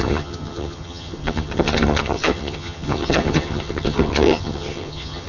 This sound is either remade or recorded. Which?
remade